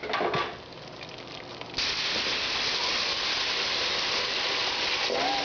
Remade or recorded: recorded